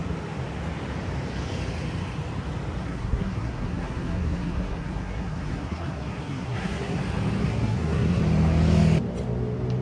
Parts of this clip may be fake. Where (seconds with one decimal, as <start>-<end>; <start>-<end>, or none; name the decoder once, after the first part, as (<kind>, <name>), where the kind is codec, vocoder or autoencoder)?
2.8-7.0 (codec, SNAC); 7.4-8.2